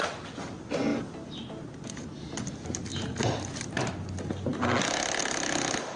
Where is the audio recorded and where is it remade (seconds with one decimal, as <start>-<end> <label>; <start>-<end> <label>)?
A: 0.0-2.9 recorded; 2.9-3.9 remade; 3.9-6.0 recorded